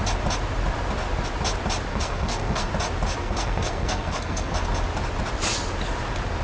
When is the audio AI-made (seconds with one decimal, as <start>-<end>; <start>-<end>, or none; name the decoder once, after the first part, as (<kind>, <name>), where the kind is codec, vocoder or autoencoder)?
1.9-2.7 (codec, SNAC); 3.2-4.5